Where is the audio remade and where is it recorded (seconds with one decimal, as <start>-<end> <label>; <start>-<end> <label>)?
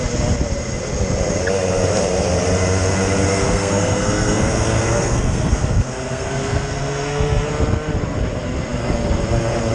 0.0-3.3 recorded; 3.3-7.5 remade; 7.5-9.7 recorded